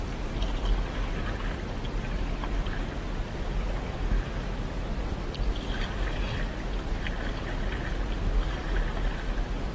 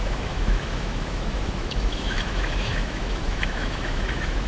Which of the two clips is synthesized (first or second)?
second